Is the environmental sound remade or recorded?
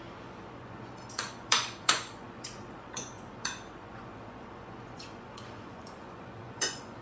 remade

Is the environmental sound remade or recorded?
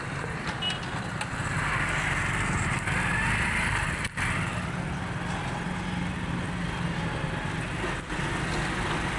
recorded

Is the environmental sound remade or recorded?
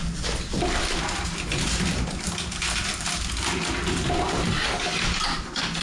recorded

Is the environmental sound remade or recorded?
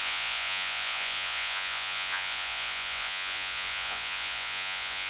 remade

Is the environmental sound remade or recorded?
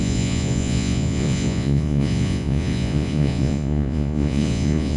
remade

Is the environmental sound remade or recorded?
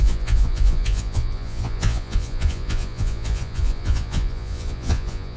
remade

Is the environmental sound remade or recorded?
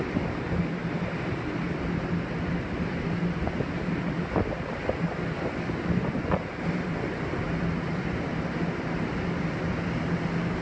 recorded